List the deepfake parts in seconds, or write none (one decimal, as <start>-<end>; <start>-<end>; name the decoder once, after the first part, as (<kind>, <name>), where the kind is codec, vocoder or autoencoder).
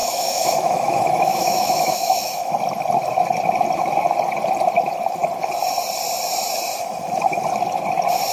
0.0-2.5 (autoencoder, DAC-VAE)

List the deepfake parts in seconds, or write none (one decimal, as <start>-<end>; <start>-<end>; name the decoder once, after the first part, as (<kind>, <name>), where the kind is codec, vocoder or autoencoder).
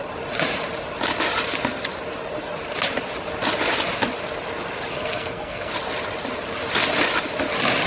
4.9-5.7 (codec, SNAC)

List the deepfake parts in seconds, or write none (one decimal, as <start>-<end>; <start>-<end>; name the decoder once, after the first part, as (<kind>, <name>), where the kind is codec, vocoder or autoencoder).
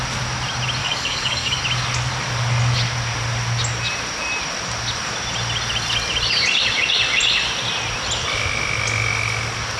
0.8-1.6 (codec, DAC)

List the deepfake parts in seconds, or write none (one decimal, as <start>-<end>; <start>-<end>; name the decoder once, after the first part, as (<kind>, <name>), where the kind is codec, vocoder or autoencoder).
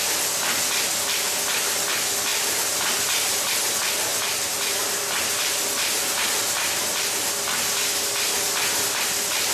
2.3-3.5 (vocoder, BigVGAN v2); 4.1-4.8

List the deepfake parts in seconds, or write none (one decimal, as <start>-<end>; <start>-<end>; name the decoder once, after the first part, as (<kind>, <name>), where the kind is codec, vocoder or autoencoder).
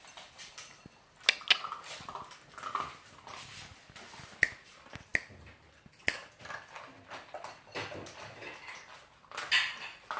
none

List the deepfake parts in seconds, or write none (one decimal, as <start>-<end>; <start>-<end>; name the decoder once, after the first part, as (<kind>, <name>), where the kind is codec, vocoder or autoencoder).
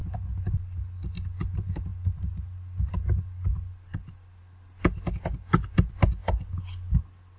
none